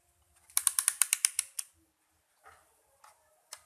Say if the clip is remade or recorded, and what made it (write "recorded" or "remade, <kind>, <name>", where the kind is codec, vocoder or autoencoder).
recorded